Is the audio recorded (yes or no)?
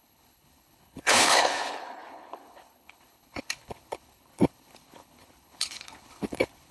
no